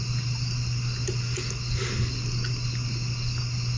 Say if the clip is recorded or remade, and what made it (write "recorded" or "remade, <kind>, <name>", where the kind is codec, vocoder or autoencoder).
recorded